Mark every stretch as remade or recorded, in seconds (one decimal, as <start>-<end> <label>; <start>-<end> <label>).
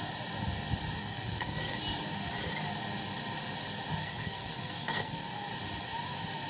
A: 0.0-1.0 recorded; 1.0-1.8 remade; 1.8-4.0 recorded; 4.0-5.5 remade; 5.5-6.5 recorded